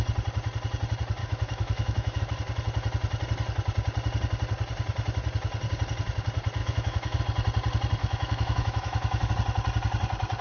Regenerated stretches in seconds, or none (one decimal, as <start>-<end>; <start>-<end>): 1.2-2.2; 6.6-7.2; 8.0-9.3